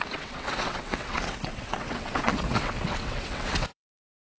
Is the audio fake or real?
fake